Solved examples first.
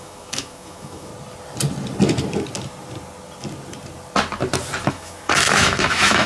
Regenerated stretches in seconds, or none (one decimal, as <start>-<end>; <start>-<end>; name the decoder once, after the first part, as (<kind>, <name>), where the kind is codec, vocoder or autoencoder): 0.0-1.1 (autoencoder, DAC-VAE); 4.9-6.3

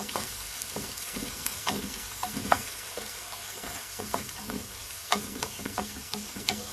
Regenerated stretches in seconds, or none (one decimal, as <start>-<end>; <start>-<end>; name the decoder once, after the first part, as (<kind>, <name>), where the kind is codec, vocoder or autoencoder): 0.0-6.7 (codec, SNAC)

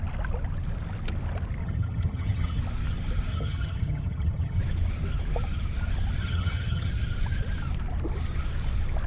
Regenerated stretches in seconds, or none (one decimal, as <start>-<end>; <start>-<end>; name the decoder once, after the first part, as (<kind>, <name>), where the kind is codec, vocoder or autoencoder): 1.6-2.6 (vocoder, HiFi-GAN); 3.3-4.6; 6.2-6.9